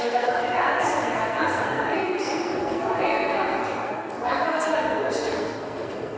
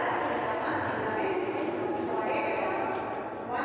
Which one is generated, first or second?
first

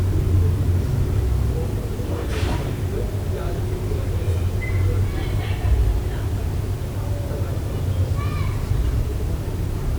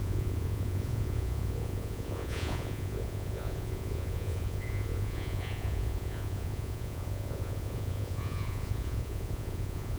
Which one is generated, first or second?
second